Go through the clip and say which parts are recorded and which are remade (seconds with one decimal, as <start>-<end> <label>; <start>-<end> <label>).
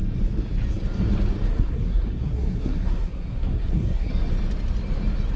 0.0-1.5 recorded; 1.5-4.1 remade; 4.1-5.4 recorded